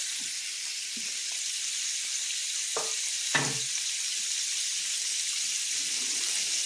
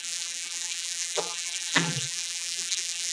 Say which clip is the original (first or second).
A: first